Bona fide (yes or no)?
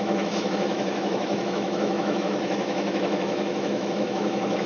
no